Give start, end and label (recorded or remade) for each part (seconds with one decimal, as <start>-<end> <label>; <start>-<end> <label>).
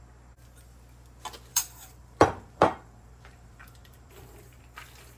0.0-1.5 recorded; 1.5-4.6 remade; 4.6-5.2 recorded